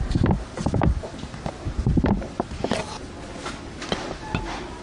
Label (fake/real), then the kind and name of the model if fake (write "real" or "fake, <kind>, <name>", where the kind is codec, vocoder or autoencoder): real